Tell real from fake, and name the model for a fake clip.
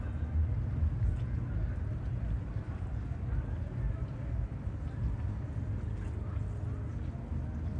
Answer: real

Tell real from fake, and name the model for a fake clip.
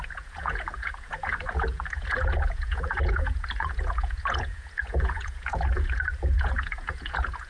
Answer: fake, vocoder, Vocos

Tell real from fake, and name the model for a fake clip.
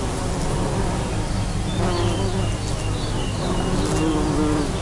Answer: real